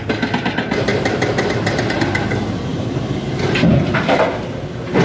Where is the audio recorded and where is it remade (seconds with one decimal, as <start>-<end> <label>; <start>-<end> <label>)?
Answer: 0.0-0.9 recorded; 0.9-2.2 remade; 2.2-2.7 recorded; 2.7-4.2 remade; 4.2-5.0 recorded